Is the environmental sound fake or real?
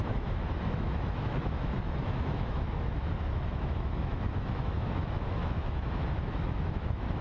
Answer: fake